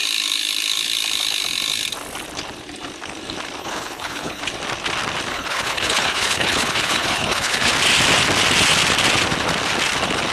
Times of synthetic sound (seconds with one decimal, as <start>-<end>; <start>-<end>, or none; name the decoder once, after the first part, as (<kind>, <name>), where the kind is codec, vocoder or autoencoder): 3.6-4.4 (codec, HILCodec); 5.3-7.7